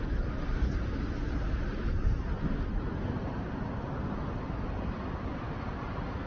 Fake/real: real